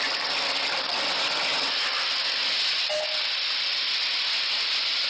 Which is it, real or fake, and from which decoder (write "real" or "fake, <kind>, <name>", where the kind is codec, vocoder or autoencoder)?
real